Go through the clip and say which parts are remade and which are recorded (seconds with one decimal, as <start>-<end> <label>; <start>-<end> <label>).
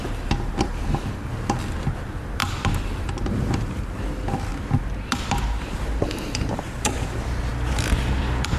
0.0-4.5 remade; 4.5-5.2 recorded; 5.2-8.6 remade